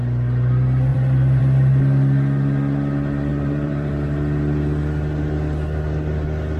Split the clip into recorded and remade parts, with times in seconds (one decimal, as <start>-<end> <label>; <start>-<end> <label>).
0.0-0.9 recorded; 0.9-1.4 remade; 1.4-3.3 recorded; 3.3-3.9 remade; 3.9-6.6 recorded